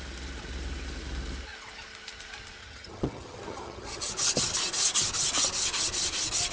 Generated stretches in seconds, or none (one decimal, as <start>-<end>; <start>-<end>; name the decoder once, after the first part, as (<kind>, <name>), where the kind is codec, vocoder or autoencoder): 2.6-4.1 (vocoder, HiFi-GAN)